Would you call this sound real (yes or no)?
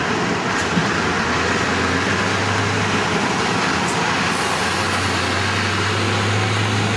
yes